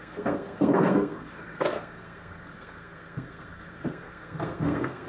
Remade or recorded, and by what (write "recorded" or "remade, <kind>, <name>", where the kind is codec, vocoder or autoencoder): remade, codec, SNAC